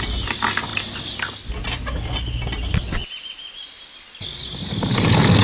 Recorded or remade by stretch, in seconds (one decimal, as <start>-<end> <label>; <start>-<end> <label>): 0.0-5.4 recorded